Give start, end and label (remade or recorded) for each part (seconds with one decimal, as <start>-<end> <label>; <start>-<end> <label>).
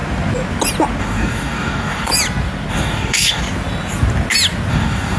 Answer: 0.0-1.0 recorded; 1.0-2.1 remade; 2.1-2.7 recorded; 2.7-3.4 remade; 3.4-4.7 recorded; 4.7-5.2 remade